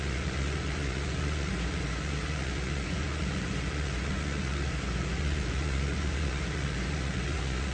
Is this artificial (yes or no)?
yes